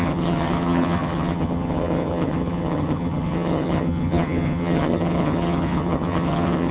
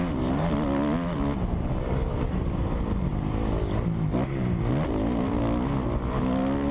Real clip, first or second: second